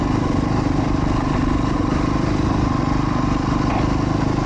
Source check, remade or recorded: recorded